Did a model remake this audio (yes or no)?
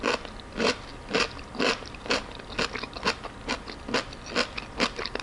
no